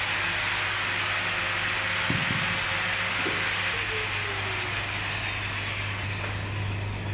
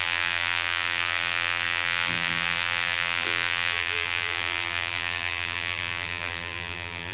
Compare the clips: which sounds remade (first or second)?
second